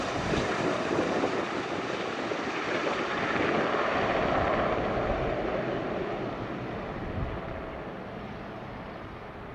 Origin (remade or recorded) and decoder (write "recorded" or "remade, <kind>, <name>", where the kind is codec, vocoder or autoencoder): remade, vocoder, BigVGAN v2